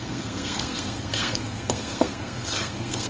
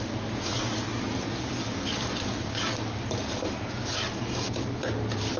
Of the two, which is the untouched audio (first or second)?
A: second